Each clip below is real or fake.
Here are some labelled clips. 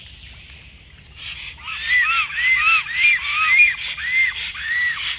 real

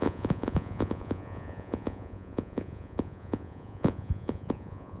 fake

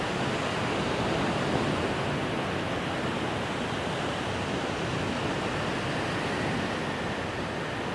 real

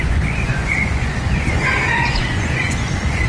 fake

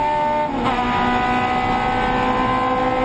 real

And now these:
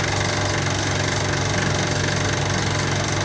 real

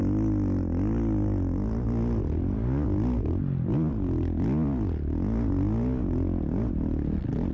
real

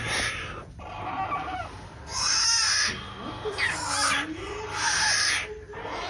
real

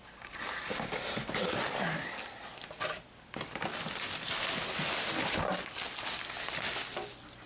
real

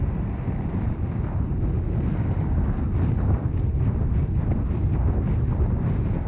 real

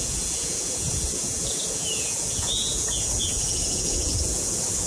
fake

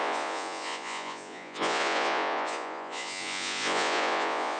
fake